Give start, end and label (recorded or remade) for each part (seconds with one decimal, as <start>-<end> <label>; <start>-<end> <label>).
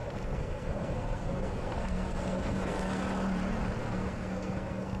0.0-3.0 remade; 3.0-3.8 recorded; 3.8-5.0 remade